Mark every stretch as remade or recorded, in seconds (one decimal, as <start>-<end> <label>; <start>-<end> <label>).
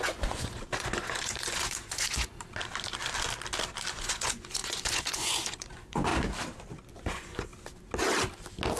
0.0-2.3 remade; 2.3-3.9 recorded; 3.9-6.1 remade; 6.1-6.9 recorded; 6.9-7.5 remade; 7.5-8.8 recorded